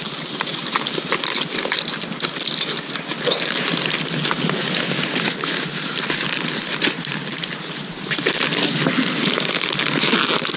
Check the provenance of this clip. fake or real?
real